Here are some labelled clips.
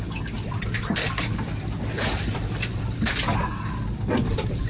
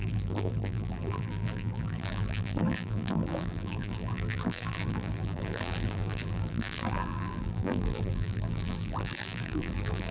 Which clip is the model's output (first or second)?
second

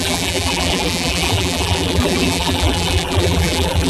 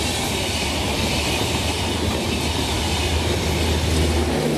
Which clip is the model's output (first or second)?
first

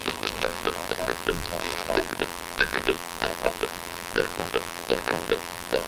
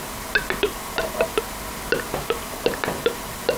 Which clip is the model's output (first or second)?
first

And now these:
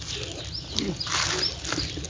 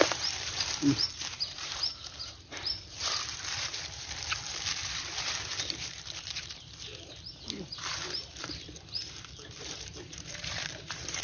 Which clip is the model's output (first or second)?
second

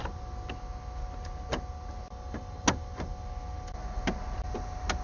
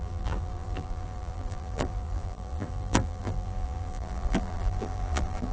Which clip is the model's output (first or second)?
second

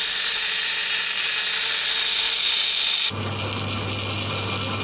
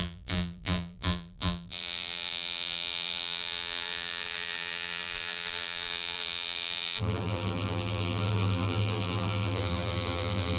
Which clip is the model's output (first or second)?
second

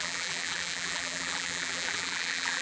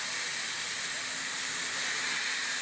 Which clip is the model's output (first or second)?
first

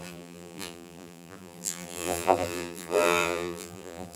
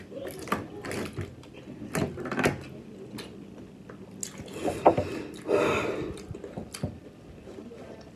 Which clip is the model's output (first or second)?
first